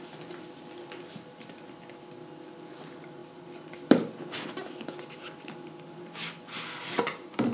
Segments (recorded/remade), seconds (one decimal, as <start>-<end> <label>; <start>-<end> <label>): 0.0-7.5 recorded

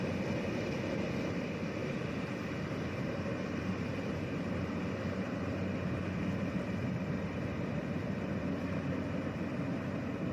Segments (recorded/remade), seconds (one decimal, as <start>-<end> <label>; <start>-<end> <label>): 0.0-1.8 recorded; 1.8-6.0 remade; 6.0-6.8 recorded; 6.8-7.3 remade; 7.3-10.3 recorded

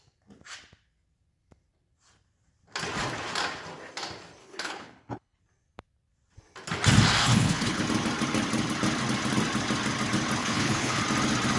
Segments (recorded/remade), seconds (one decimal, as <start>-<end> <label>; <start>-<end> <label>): 0.0-4.4 recorded; 4.4-5.4 remade; 5.4-7.2 recorded; 7.2-7.8 remade; 7.8-10.4 recorded; 10.4-11.0 remade; 11.0-11.6 recorded

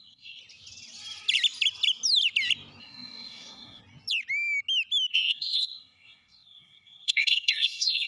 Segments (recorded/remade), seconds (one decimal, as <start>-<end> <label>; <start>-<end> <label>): 0.0-0.4 remade; 0.4-2.8 recorded; 2.8-3.8 remade; 3.8-5.1 recorded; 5.1-8.1 remade